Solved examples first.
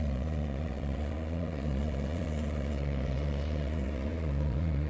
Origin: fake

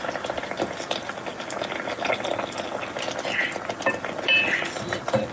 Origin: real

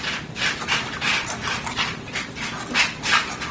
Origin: real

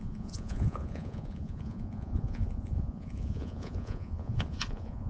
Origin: fake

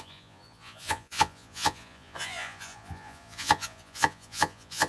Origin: fake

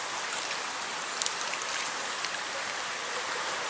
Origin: real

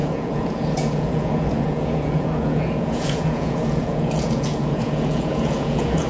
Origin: fake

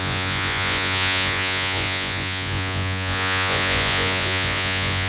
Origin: fake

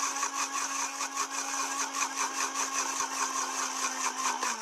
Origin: real